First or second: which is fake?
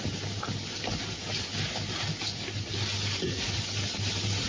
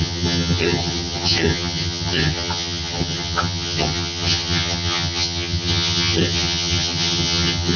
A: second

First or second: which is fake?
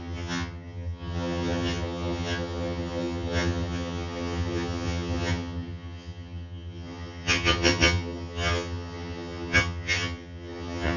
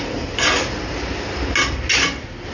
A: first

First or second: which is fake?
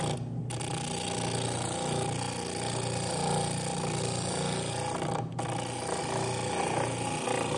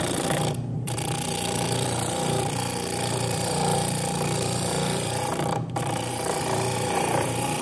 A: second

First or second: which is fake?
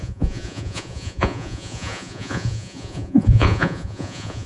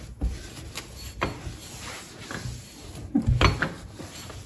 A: first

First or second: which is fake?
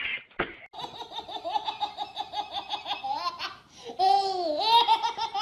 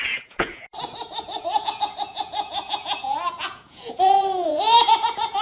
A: second